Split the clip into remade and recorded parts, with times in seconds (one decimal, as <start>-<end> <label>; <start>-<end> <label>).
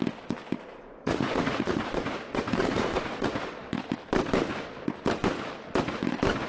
0.0-0.7 recorded; 0.7-3.6 remade; 3.6-6.5 recorded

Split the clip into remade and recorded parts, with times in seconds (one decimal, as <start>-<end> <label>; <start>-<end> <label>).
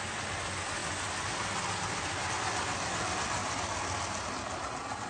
0.0-5.1 recorded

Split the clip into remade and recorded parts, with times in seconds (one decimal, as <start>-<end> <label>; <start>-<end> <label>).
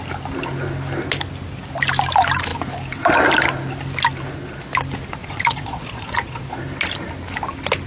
0.0-5.2 recorded; 5.2-6.6 remade; 6.6-7.9 recorded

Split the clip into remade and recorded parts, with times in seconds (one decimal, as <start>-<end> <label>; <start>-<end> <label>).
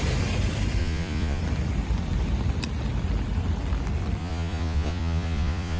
0.0-0.8 recorded; 0.8-1.4 remade; 1.4-4.2 recorded; 4.2-5.8 remade